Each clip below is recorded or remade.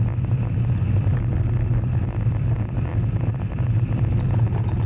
recorded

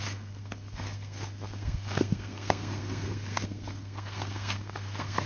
remade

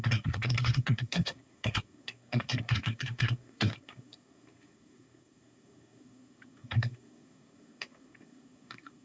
remade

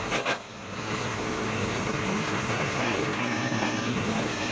remade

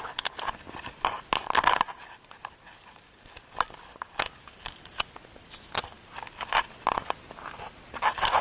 recorded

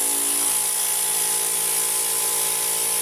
recorded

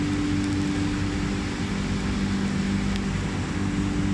recorded